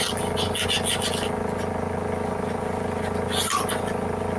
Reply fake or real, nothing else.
real